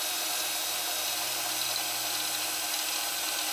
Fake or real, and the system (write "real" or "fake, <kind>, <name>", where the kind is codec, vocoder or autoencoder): real